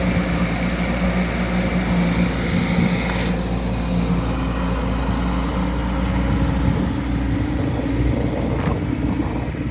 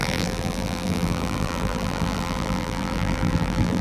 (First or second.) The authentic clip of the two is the first